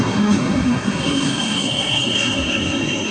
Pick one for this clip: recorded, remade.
remade